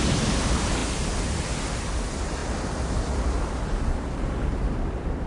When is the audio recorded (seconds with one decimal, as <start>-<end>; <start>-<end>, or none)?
0.0-5.3